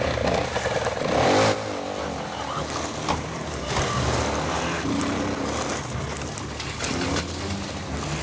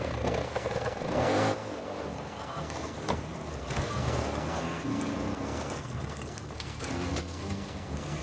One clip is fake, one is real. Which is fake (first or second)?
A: second